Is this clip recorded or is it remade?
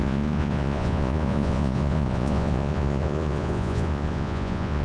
remade